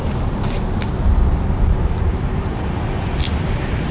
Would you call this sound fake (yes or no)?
no